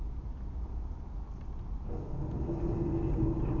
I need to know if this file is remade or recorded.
recorded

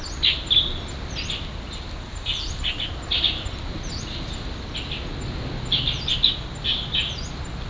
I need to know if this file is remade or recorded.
recorded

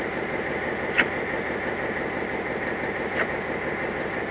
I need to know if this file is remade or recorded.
recorded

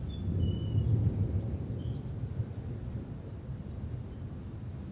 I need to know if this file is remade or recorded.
recorded